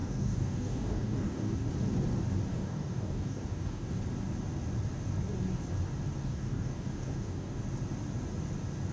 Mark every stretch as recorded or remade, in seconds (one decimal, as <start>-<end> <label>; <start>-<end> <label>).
0.0-1.7 remade; 1.7-2.5 recorded; 2.5-4.0 remade; 4.0-6.2 recorded; 6.2-7.6 remade; 7.6-8.9 recorded